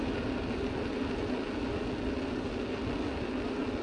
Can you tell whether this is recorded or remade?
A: recorded